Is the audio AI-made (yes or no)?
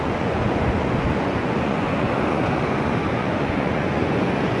yes